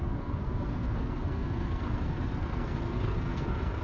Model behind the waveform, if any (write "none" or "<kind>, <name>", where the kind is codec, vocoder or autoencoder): codec, SNAC